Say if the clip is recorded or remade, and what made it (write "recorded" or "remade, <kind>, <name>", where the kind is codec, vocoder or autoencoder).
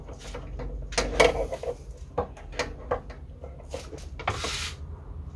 recorded